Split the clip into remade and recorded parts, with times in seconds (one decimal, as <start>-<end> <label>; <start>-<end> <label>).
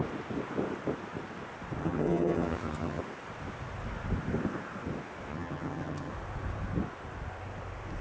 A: 0.0-1.8 recorded; 1.8-3.0 remade; 3.0-5.3 recorded; 5.3-6.1 remade; 6.1-8.0 recorded